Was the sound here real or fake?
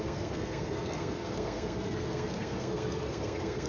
fake